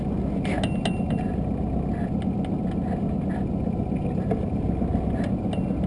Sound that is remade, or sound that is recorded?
recorded